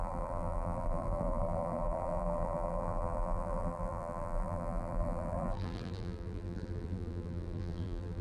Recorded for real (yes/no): no